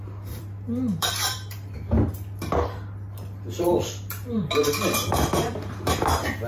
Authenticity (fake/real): fake